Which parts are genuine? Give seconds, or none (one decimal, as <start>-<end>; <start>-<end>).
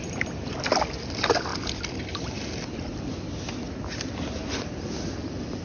0.0-5.6